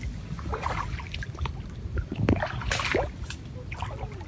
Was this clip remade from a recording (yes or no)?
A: no